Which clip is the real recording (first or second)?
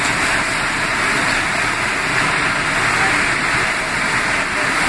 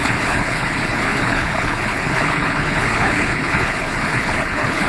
first